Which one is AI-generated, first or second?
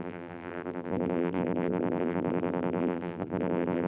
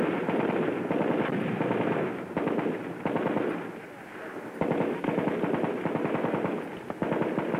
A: first